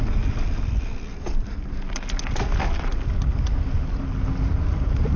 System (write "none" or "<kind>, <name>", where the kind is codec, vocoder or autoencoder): none